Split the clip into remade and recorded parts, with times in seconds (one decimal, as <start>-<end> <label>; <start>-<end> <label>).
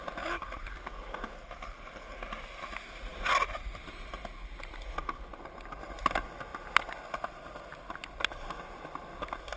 0.0-9.6 recorded